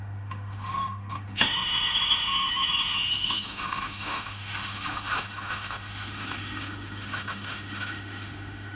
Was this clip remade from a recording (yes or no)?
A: yes